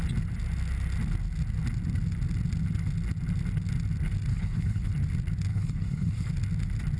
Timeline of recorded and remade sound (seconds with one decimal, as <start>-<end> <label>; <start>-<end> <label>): 0.0-4.3 recorded; 4.3-4.9 remade; 4.9-5.5 recorded; 5.5-6.3 remade; 6.3-7.0 recorded